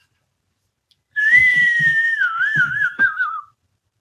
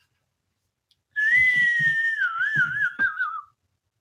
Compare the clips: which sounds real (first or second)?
second